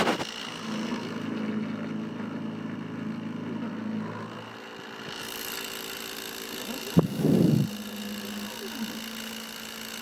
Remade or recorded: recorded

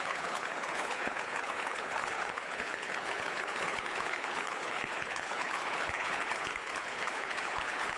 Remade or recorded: remade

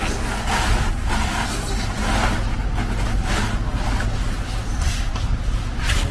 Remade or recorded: recorded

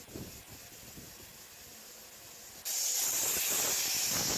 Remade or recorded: recorded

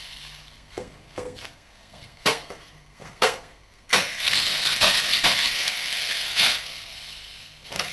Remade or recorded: remade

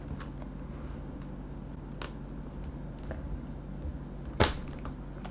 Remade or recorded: recorded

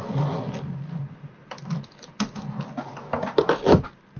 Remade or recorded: recorded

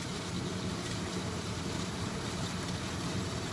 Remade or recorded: remade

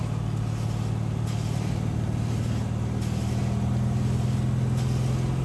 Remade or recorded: recorded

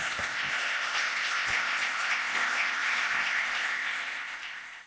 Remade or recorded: remade